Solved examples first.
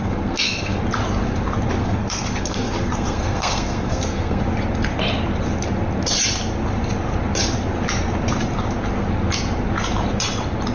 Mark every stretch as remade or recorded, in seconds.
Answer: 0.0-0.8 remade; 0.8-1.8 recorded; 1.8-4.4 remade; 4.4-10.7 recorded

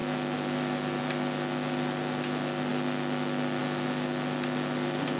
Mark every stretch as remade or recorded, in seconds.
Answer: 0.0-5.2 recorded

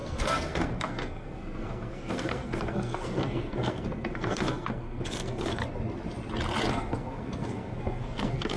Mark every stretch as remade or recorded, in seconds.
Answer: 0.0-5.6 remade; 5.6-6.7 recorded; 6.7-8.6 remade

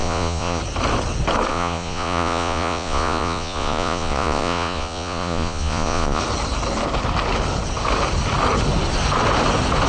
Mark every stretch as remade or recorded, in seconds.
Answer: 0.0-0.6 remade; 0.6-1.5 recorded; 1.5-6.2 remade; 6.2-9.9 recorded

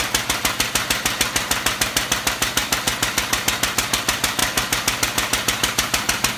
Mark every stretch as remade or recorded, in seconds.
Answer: 0.0-6.4 recorded